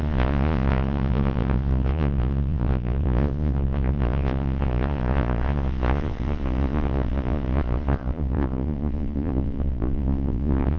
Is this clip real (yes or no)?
no